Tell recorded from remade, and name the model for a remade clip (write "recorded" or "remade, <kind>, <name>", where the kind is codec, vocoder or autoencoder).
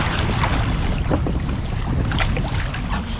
recorded